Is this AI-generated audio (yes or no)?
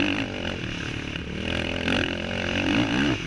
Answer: no